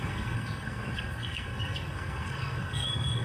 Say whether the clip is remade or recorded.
remade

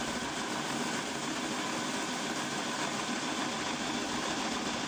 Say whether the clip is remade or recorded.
recorded